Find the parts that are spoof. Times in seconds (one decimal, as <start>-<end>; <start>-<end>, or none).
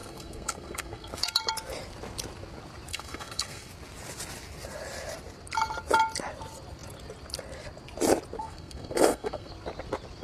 0.0-1.1; 2.9-3.7; 8.4-9.5